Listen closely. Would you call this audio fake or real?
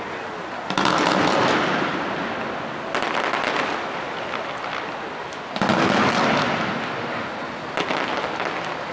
real